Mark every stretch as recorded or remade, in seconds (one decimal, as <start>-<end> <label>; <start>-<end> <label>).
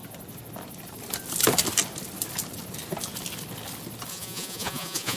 0.0-4.1 recorded; 4.1-5.2 remade